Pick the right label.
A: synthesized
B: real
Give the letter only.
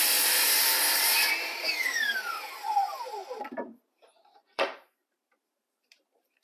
A